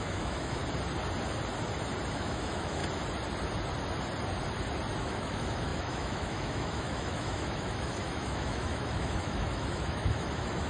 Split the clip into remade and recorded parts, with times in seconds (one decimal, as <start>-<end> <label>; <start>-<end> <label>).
0.0-0.6 remade; 0.6-2.1 recorded; 2.1-2.8 remade; 2.8-5.0 recorded; 5.0-10.7 remade